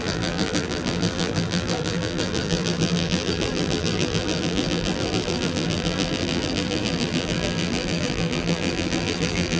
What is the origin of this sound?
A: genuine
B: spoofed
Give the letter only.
B